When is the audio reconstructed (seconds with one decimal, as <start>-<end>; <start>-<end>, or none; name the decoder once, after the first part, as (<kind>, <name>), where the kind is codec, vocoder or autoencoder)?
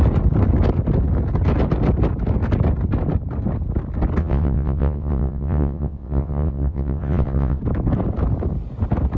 4.2-7.6 (vocoder, WaveNeXt)